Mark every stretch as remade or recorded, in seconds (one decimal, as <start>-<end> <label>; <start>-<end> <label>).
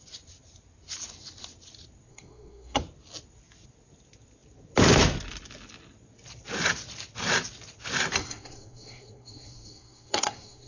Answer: 0.0-2.1 recorded; 2.1-2.8 remade; 2.8-8.2 recorded; 8.2-10.7 remade